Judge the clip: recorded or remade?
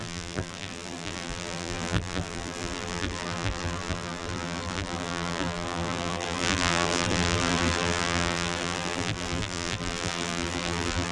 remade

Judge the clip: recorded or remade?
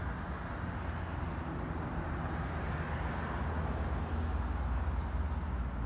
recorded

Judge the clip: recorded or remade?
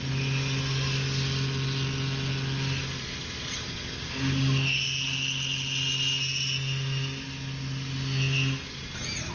recorded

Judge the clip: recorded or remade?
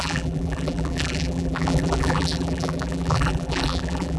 remade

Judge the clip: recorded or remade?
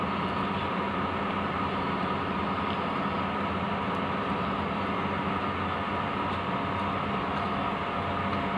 recorded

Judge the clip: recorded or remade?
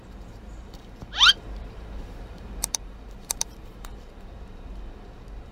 remade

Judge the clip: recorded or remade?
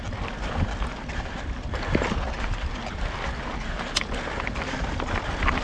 recorded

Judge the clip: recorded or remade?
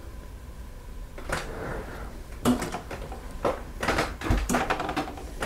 remade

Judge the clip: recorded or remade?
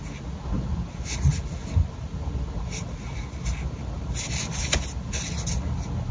recorded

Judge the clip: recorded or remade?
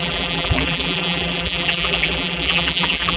remade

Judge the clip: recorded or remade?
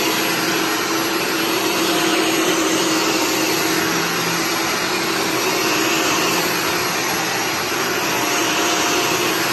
recorded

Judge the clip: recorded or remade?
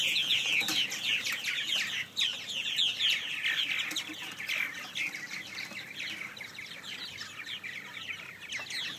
remade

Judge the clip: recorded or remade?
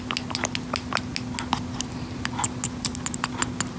recorded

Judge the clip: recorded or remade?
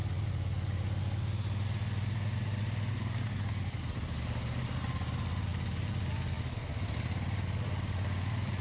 recorded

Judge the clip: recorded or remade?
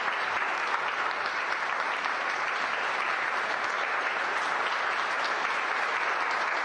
remade